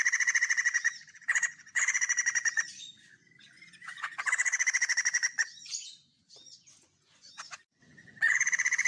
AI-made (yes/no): yes